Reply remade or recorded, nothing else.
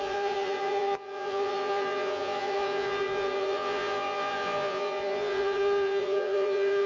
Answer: remade